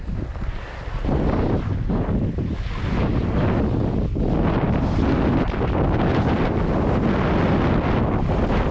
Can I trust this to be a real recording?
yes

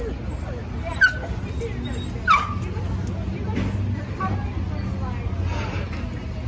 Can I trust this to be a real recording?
yes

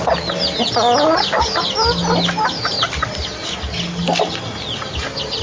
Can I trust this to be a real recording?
yes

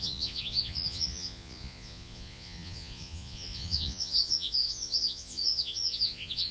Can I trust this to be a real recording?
no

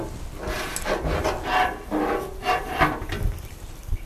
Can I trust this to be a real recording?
yes